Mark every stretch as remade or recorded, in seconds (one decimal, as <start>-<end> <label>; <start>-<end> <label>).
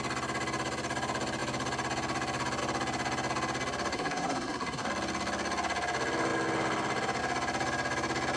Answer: 0.0-3.9 recorded; 3.9-4.9 remade; 4.9-8.4 recorded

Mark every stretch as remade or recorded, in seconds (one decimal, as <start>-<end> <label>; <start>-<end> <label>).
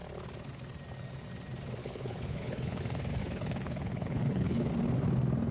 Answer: 0.0-1.8 recorded; 1.8-2.8 remade; 2.8-3.2 recorded; 3.2-4.7 remade; 4.7-5.5 recorded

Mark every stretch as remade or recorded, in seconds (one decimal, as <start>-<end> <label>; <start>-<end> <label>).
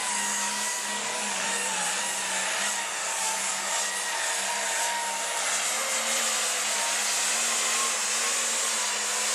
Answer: 0.0-1.4 remade; 1.4-3.0 recorded; 3.0-3.8 remade; 3.8-9.3 recorded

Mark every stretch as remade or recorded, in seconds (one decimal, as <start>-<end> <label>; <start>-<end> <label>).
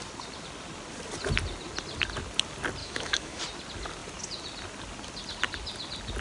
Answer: 0.0-2.8 recorded; 2.8-3.4 remade; 3.4-6.2 recorded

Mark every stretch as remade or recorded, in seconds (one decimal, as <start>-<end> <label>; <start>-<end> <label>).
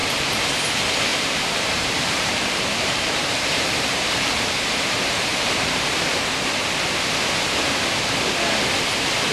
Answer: 0.0-0.6 remade; 0.6-1.1 recorded; 1.1-4.5 remade; 4.5-5.3 recorded; 5.3-5.9 remade; 5.9-9.3 recorded